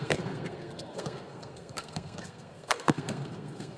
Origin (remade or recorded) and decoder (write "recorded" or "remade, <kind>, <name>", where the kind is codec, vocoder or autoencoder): remade, codec, SNAC